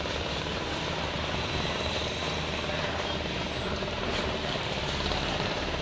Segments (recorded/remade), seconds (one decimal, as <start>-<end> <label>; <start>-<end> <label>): 0.0-2.2 remade; 2.2-2.7 recorded; 2.7-5.8 remade